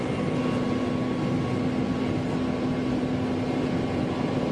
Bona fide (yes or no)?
yes